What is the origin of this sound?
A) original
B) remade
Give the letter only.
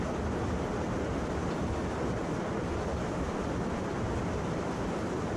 A